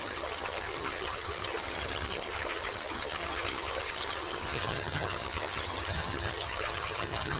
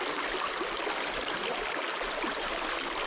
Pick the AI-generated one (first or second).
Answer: first